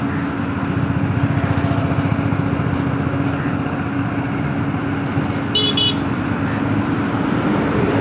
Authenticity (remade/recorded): recorded